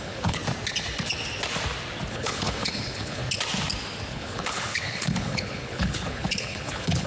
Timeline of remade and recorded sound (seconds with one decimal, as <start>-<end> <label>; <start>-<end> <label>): 0.0-0.4 remade; 0.4-2.1 recorded; 2.1-3.2 remade; 3.2-4.1 recorded; 4.1-7.1 remade